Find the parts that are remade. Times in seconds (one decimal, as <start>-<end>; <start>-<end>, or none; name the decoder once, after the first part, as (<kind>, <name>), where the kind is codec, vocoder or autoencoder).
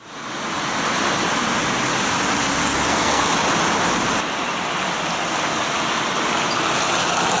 2.6-3.2 (codec, SNAC)